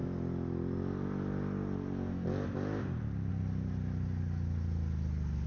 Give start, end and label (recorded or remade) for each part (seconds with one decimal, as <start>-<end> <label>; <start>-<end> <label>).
0.0-5.5 recorded